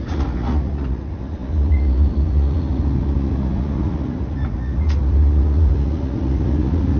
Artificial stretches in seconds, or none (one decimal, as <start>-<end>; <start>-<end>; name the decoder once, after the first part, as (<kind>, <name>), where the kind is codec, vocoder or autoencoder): 0.0-7.0 (vocoder, Vocos)